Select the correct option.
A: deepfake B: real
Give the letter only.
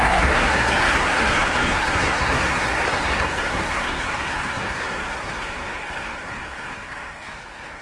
A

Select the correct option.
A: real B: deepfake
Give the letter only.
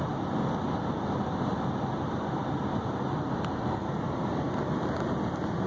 A